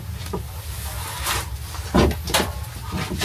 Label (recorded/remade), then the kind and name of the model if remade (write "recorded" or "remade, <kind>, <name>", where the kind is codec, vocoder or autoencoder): recorded